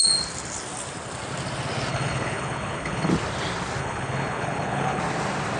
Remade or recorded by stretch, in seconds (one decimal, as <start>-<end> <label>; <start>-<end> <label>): 0.0-1.9 recorded; 1.9-3.1 remade; 3.1-3.8 recorded; 3.8-5.0 remade; 5.0-5.6 recorded